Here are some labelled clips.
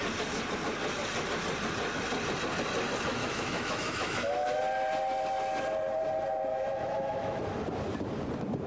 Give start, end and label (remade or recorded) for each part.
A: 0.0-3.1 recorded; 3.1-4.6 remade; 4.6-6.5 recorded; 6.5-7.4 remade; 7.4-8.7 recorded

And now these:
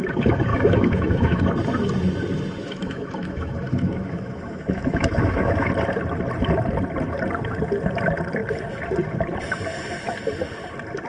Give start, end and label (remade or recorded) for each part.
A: 0.0-0.5 recorded; 0.5-1.4 remade; 1.4-2.6 recorded; 2.6-5.7 remade; 5.7-11.1 recorded

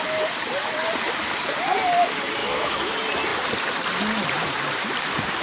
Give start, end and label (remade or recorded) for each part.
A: 0.0-2.4 recorded; 2.4-2.9 remade; 2.9-5.4 recorded

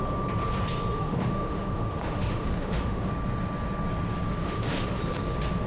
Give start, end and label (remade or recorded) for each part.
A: 0.0-0.9 recorded; 0.9-3.1 remade; 3.1-4.4 recorded; 4.4-5.0 remade; 5.0-5.7 recorded

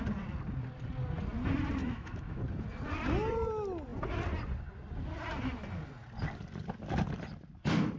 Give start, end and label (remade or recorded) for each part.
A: 0.0-1.8 recorded; 1.8-2.4 remade; 2.4-8.0 recorded

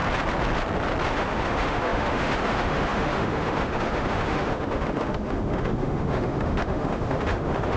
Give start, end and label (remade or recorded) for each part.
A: 0.0-1.1 recorded; 1.1-7.8 remade

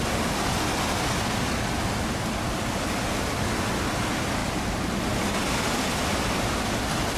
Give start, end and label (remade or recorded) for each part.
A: 0.0-7.2 recorded

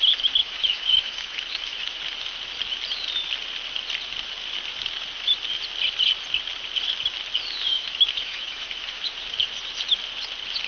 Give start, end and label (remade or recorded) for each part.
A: 0.0-0.4 recorded; 0.4-2.0 remade; 2.0-7.7 recorded; 7.7-9.1 remade; 9.1-10.7 recorded